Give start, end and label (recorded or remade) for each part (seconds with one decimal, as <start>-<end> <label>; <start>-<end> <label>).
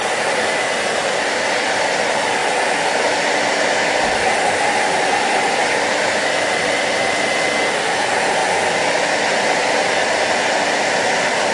0.0-8.4 remade; 8.4-9.3 recorded; 9.3-11.5 remade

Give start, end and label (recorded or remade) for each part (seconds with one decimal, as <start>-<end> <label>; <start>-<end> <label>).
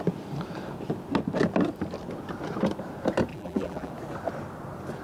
0.0-3.3 recorded; 3.3-3.9 remade; 3.9-5.0 recorded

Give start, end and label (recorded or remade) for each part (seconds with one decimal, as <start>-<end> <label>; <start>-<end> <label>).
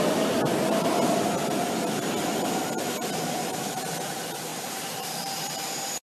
0.0-4.5 recorded; 4.5-6.0 remade